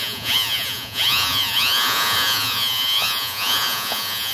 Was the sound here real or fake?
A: fake